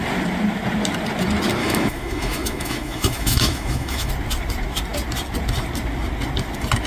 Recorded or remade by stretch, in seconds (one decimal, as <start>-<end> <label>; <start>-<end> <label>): 0.0-1.6 recorded; 1.6-4.1 remade; 4.1-6.9 recorded